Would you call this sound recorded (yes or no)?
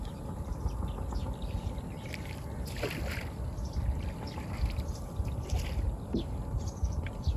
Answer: yes